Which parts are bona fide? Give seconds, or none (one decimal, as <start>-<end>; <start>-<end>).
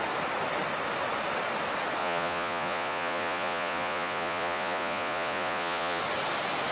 0.0-2.0; 6.0-6.7